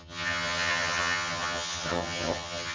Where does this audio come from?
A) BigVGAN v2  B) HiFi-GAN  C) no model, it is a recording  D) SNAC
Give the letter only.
B